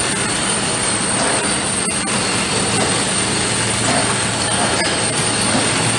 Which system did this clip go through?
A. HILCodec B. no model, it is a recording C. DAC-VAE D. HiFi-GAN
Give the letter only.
B